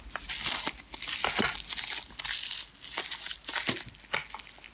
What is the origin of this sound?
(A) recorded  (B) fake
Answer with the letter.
A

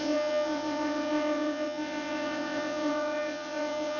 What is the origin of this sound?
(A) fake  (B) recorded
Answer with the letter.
A